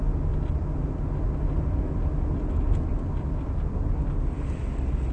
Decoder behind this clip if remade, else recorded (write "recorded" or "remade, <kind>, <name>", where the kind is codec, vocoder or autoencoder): recorded